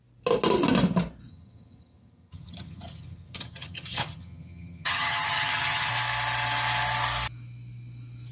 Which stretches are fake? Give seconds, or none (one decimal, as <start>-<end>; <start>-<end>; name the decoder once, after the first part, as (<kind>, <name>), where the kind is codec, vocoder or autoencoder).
1.3-5.9 (vocoder, HiFi-GAN)